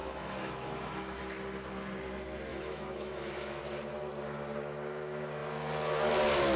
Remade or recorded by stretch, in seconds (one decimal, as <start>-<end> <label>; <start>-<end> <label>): 0.0-1.2 remade; 1.2-2.5 recorded; 2.5-3.6 remade; 3.6-6.6 recorded